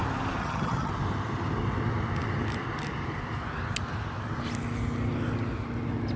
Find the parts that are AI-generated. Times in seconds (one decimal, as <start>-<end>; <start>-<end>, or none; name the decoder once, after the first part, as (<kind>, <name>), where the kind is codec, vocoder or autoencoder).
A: 0.4-0.9 (vocoder, HiFi-GAN)